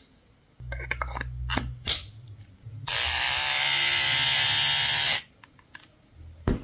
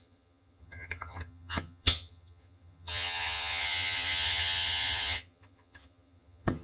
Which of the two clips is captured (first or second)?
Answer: first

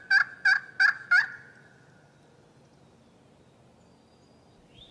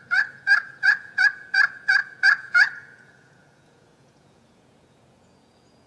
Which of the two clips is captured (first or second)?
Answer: first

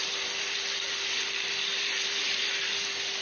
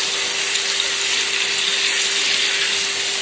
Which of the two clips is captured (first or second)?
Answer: second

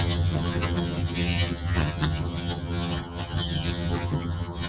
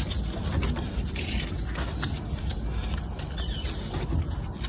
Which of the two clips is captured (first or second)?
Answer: second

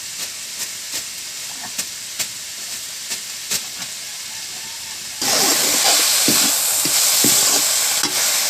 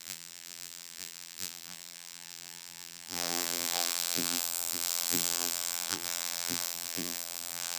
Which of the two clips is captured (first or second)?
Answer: first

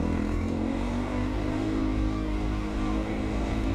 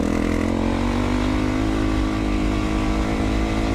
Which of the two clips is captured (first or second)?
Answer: second